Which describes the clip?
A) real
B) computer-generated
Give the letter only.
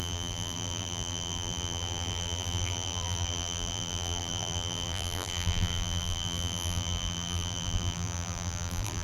B